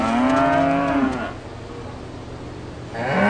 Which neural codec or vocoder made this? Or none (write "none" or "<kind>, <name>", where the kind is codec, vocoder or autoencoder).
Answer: none